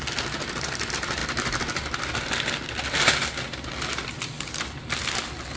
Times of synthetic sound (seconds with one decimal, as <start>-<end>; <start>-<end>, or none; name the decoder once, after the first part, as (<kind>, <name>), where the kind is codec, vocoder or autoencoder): none